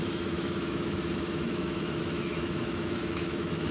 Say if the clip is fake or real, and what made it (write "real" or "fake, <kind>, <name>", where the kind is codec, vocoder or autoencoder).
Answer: fake, autoencoder, DAC-VAE